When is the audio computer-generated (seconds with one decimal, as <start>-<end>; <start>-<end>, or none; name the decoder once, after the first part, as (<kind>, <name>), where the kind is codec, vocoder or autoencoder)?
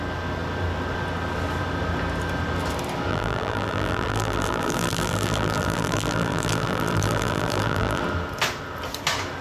3.1-8.0 (vocoder, BigVGAN v2)